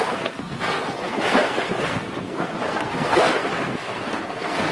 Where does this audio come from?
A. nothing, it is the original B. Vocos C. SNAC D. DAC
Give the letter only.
C